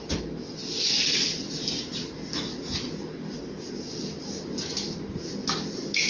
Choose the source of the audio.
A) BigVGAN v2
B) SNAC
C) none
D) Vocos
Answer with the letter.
C